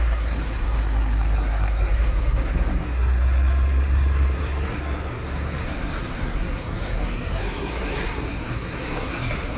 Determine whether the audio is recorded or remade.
remade